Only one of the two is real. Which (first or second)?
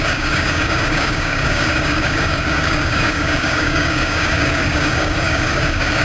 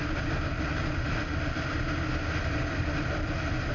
second